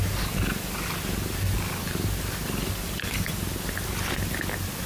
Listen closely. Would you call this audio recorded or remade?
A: recorded